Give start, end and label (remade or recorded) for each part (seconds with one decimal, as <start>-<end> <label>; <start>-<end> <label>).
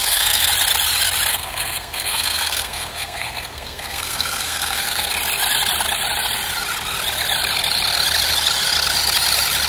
0.0-0.5 remade; 0.5-1.3 recorded; 1.3-5.1 remade; 5.1-9.7 recorded